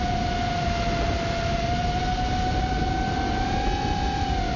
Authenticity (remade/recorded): recorded